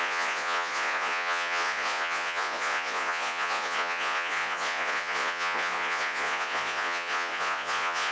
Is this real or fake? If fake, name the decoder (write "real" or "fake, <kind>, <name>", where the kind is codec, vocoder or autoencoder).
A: fake, vocoder, Vocos